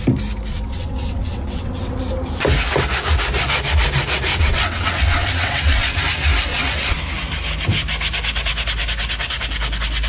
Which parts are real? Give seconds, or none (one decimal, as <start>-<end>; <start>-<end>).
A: 0.0-0.5; 1.9-4.3; 6.0-6.5; 7.0-10.1